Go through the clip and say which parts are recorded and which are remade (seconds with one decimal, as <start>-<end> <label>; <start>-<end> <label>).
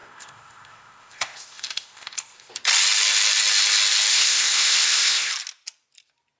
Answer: 0.0-2.5 remade; 2.5-4.1 recorded; 4.1-5.3 remade; 5.3-6.4 recorded